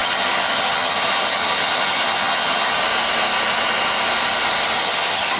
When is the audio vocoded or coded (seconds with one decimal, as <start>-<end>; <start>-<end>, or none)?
0.0-2.8; 4.8-5.4